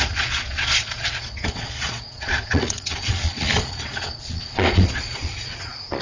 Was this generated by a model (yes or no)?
yes